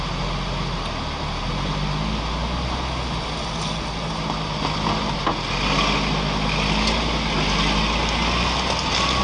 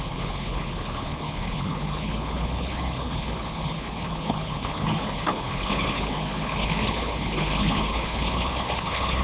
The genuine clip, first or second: first